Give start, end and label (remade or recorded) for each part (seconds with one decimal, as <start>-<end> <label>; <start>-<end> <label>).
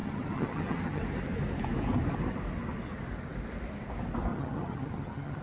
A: 0.0-1.0 remade; 1.0-4.3 recorded; 4.3-5.4 remade